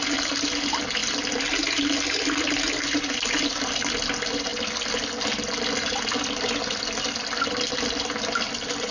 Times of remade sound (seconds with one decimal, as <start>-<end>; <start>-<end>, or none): none